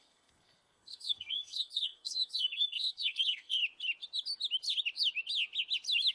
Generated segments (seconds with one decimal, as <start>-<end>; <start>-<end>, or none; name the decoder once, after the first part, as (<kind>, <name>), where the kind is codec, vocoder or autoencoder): 0.0-3.6 (codec, SNAC)